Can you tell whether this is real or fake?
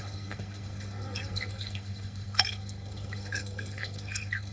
fake